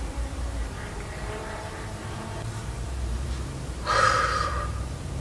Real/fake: fake